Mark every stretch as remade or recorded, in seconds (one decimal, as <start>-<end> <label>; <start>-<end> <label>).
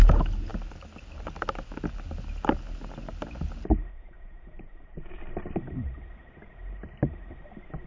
0.0-3.9 recorded; 3.9-5.2 remade; 5.2-7.9 recorded